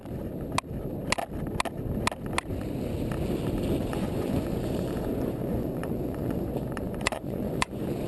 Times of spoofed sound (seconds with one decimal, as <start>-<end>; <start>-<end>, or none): 3.9-8.1